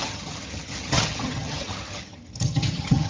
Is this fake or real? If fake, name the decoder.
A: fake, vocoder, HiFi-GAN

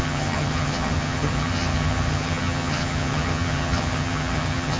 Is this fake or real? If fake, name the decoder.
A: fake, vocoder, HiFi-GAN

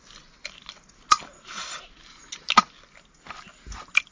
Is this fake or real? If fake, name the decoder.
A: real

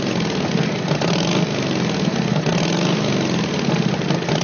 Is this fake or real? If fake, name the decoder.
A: real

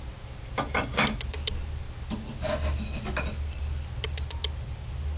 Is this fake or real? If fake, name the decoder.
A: real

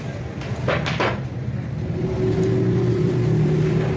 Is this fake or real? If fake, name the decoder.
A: real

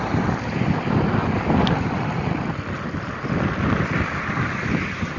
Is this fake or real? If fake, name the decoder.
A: real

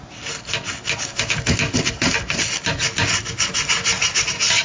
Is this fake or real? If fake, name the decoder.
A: real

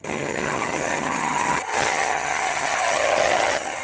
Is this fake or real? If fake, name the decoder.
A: fake, vocoder, HiFi-GAN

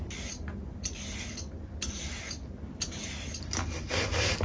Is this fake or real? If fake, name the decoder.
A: real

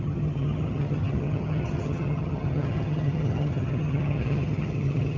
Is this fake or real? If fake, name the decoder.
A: fake, vocoder, HiFi-GAN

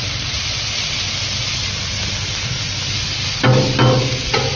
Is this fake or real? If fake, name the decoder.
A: real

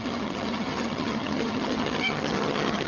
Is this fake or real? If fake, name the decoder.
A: fake, vocoder, HiFi-GAN